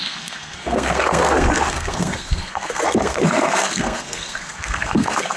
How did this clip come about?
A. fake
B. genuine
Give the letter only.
A